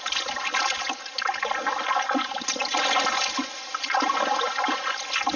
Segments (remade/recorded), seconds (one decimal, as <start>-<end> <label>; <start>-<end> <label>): 0.0-5.4 recorded